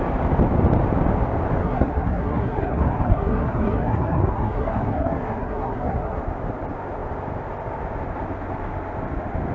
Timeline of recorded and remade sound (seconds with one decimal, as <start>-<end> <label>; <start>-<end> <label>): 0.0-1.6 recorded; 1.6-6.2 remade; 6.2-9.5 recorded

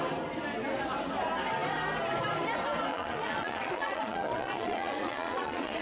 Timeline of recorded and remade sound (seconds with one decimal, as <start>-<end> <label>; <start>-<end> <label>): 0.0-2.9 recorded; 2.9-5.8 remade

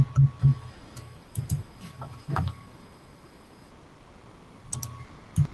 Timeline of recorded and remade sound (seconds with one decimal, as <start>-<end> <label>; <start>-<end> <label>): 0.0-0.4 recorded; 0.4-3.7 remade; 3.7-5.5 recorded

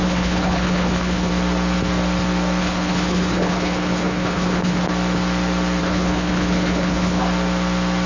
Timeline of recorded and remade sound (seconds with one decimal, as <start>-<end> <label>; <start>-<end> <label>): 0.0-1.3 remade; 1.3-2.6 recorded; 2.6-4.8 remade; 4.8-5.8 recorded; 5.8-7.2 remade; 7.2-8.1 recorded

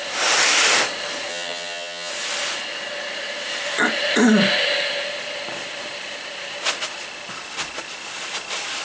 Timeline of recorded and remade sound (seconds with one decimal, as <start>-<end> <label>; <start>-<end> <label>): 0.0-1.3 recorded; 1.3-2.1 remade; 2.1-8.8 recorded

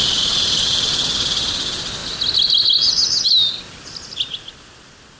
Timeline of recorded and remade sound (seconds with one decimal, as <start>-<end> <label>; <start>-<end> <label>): 0.0-5.2 recorded

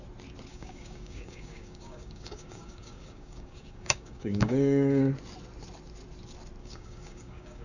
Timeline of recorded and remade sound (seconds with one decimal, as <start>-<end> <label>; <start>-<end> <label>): 0.0-0.5 recorded; 0.5-5.1 remade; 5.1-6.6 recorded; 6.6-7.6 remade

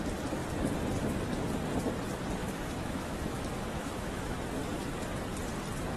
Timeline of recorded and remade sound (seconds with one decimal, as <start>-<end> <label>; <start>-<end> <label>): 0.0-2.4 recorded; 2.4-4.4 remade; 4.4-6.0 recorded